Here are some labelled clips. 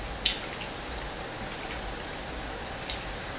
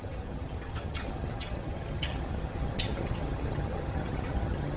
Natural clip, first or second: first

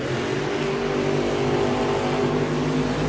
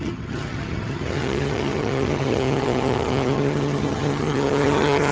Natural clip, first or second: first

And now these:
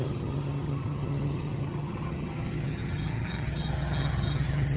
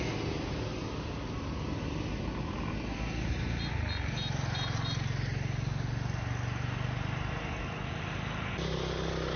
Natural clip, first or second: second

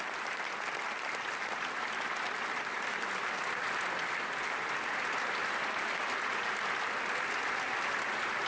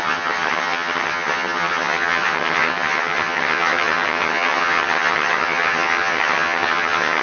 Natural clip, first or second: first